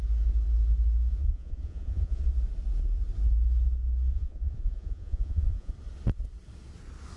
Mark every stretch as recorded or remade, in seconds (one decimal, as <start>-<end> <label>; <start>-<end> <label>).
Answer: 0.0-1.1 recorded; 1.1-2.2 remade; 2.2-4.1 recorded; 4.1-5.7 remade; 5.7-7.2 recorded